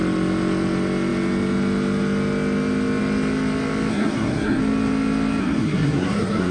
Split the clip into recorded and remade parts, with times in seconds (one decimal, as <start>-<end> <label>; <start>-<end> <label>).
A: 0.0-3.9 recorded; 3.9-4.6 remade; 4.6-5.4 recorded; 5.4-6.5 remade